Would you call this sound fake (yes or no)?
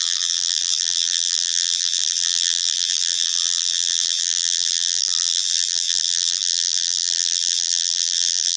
yes